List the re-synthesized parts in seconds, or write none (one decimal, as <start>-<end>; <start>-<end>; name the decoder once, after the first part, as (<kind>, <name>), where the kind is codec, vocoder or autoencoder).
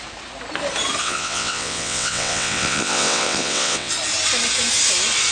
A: 1.0-3.9 (vocoder, WaveNeXt)